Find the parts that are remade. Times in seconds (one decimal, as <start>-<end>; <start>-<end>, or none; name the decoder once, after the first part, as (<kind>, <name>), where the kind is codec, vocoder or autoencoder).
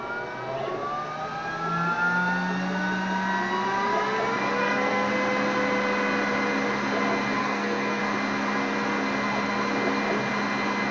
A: 4.6-5.1 (codec, SNAC); 7.4-8.0